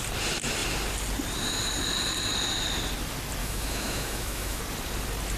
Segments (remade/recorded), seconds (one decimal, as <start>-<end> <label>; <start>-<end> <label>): 0.0-3.4 recorded; 3.4-4.6 remade; 4.6-5.4 recorded